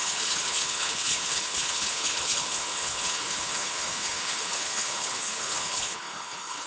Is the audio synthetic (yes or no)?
yes